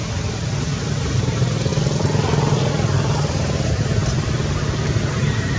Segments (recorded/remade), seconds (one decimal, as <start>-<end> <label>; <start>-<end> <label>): 0.0-1.2 recorded; 1.2-1.7 remade; 1.7-2.7 recorded; 2.7-4.0 remade; 4.0-5.1 recorded; 5.1-5.6 remade